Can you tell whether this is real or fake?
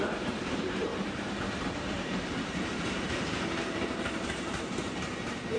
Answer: fake